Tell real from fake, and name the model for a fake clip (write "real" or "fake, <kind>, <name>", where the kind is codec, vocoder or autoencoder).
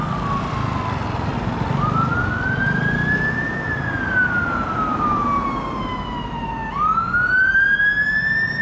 real